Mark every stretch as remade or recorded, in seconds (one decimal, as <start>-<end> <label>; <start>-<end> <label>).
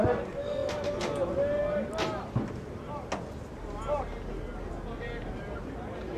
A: 0.0-6.2 recorded